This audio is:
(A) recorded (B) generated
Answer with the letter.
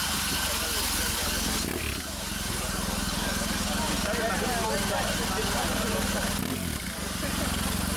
A